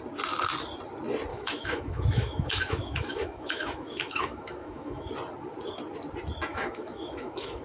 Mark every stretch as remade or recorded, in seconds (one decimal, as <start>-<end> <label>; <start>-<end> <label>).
0.0-1.3 recorded; 1.3-5.1 remade; 5.1-6.5 recorded; 6.5-7.6 remade